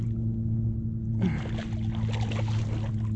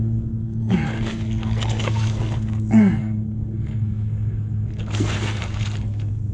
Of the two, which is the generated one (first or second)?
second